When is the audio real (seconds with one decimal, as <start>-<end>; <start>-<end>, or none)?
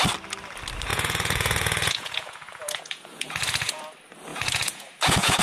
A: 0.0-0.9; 3.8-4.3